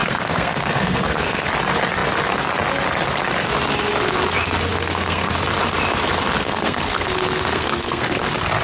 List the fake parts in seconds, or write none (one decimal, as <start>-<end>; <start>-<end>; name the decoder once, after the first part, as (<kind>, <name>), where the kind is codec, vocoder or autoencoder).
0.0-1.5 (codec, SNAC); 4.7-5.3; 6.4-8.2